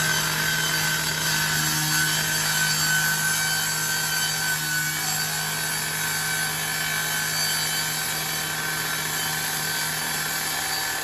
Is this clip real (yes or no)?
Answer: yes